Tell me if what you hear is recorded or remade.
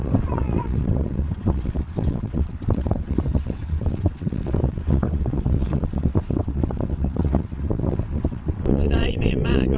remade